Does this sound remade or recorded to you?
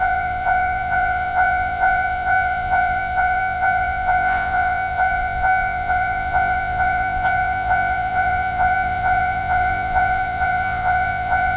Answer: remade